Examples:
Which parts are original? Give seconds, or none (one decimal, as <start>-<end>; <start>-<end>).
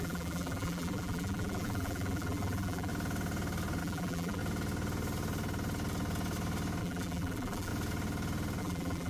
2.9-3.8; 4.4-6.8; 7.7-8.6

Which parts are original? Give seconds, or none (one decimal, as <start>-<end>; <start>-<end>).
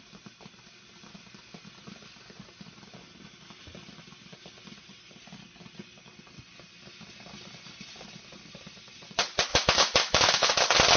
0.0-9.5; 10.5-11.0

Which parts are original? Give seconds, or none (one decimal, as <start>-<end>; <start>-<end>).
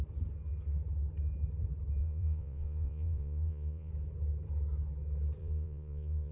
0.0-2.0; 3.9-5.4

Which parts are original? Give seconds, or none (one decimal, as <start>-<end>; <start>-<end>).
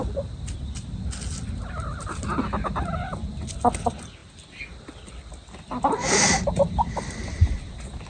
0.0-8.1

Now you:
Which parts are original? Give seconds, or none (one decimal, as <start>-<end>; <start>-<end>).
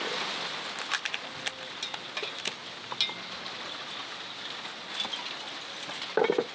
0.0-6.5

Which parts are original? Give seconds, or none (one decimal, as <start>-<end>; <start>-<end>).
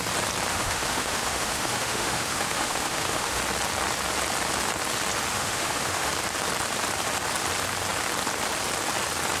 0.0-0.5; 3.4-5.3; 6.1-9.4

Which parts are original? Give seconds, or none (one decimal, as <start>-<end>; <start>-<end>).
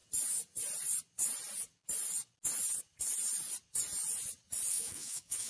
0.0-4.7